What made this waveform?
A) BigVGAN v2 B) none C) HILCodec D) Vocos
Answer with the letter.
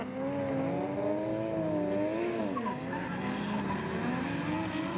B